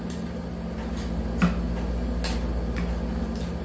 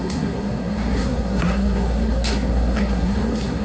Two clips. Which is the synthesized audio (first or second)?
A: second